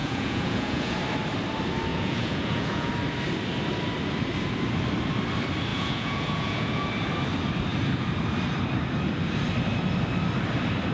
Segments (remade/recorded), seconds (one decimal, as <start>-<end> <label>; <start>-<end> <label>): 0.0-1.0 remade; 1.0-1.9 recorded; 1.9-2.9 remade; 2.9-5.7 recorded; 5.7-6.9 remade; 6.9-10.9 recorded